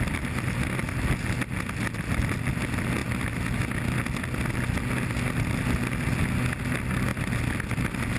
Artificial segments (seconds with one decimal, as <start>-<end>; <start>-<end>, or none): none